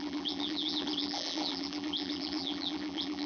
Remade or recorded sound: remade